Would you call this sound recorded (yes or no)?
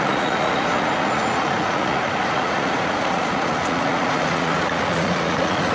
no